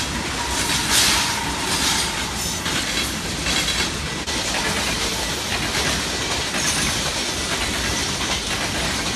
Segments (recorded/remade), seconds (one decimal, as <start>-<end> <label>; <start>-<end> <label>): 0.0-0.8 recorded; 0.8-1.4 remade; 1.4-9.2 recorded